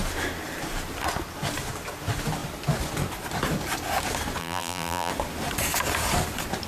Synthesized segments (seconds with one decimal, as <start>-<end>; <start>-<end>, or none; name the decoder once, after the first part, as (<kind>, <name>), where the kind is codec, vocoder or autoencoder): 4.4-5.1 (vocoder, BigVGAN v2)